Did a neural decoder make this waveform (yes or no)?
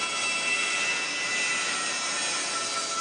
no